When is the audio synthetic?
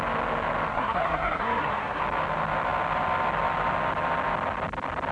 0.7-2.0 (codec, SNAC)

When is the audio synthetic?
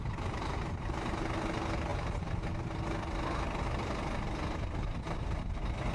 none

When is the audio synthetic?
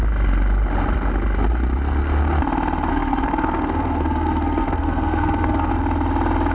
2.9-5.7 (codec, SNAC)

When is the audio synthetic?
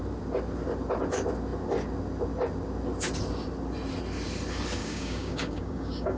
4.8-6.2 (codec, DAC)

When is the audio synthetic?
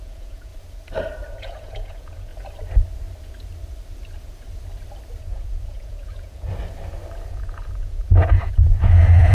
0.0-0.5 (vocoder, Vocos); 1.3-2.3; 5.2-6.5; 7.3-9.3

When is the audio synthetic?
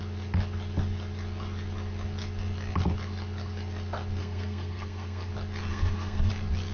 4.2-5.3 (codec, SNAC); 5.7-6.3